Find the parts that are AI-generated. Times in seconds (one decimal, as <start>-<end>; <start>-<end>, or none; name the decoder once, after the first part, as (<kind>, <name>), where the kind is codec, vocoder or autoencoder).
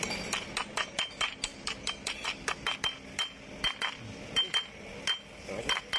none